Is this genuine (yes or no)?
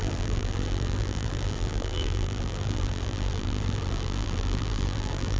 no